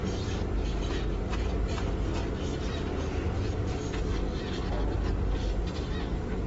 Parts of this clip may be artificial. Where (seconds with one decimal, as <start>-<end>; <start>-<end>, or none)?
none